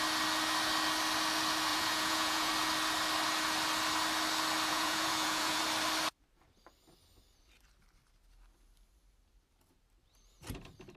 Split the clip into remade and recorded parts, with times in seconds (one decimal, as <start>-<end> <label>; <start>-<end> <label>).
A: 0.0-1.7 recorded; 1.7-2.5 remade; 2.5-4.7 recorded; 4.7-5.6 remade; 5.6-11.0 recorded